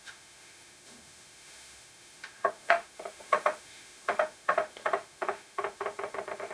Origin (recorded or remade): remade